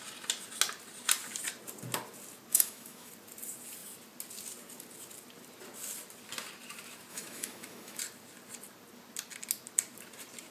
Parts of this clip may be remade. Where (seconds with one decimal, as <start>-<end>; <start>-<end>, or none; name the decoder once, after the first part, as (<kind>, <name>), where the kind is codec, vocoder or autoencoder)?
2.5-3.1 (autoencoder, DAC-VAE); 7.1-8.0